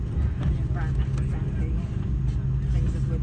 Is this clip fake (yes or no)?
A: no